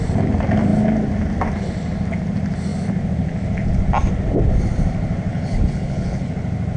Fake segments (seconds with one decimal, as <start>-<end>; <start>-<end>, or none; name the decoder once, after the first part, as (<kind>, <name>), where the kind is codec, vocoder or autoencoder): 5.3-6.3 (codec, HILCodec)